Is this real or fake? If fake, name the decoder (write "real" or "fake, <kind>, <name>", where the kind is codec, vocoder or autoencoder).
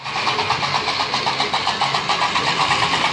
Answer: real